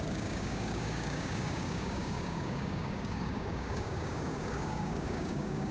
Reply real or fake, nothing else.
fake